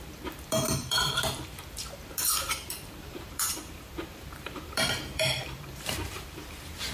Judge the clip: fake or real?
fake